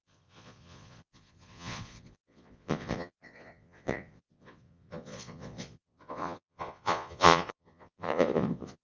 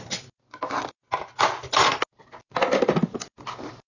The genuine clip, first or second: second